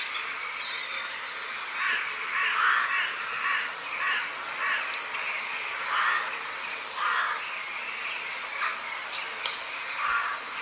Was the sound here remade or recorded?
recorded